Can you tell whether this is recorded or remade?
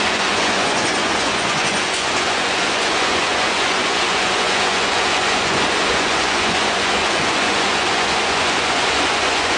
remade